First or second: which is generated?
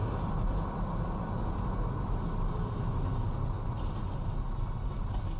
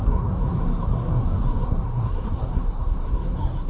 second